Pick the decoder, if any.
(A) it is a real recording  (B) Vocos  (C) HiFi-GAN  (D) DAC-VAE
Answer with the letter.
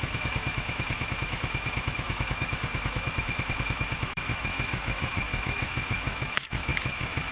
D